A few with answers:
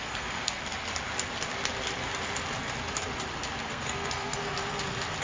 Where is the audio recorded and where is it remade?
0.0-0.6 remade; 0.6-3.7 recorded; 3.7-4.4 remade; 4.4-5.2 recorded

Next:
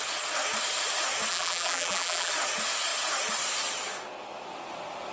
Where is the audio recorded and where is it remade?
0.0-1.3 recorded; 1.3-2.3 remade; 2.3-5.1 recorded

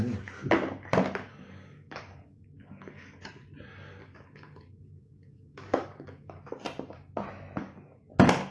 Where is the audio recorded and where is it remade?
0.0-1.3 recorded; 1.3-3.3 remade; 3.3-4.0 recorded; 4.0-6.6 remade; 6.6-7.6 recorded; 7.6-8.1 remade; 8.1-8.5 recorded

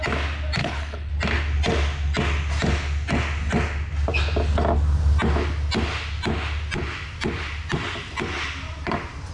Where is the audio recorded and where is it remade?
0.0-0.6 recorded; 0.6-1.1 remade; 1.1-9.3 recorded

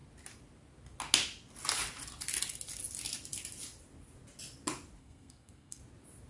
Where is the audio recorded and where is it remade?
0.0-5.0 recorded; 5.0-5.8 remade; 5.8-6.3 recorded

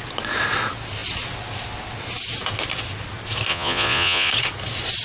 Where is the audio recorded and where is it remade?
0.0-3.5 recorded; 3.5-4.3 remade; 4.3-5.0 recorded

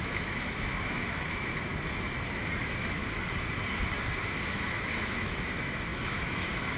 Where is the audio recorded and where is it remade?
0.0-1.7 remade; 1.7-2.6 recorded; 2.6-3.0 remade; 3.0-4.5 recorded; 4.5-6.8 remade

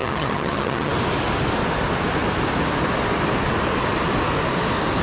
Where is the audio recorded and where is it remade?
0.0-0.9 remade; 0.9-5.0 recorded